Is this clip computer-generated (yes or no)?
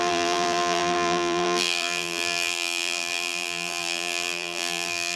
yes